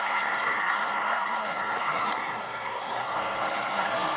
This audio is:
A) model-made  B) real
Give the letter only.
A